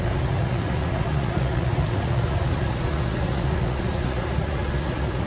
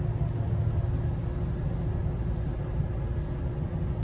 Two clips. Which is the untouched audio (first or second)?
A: second